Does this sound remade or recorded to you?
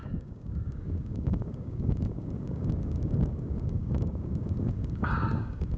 remade